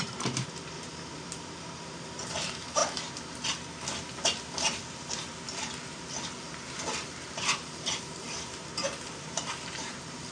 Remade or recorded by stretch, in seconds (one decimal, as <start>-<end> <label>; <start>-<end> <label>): 0.0-2.8 remade; 2.8-7.3 recorded; 7.3-10.3 remade